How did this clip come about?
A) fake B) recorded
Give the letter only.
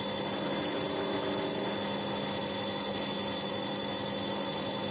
B